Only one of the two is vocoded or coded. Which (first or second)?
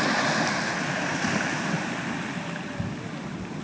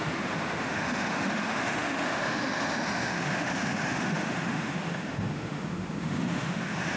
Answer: second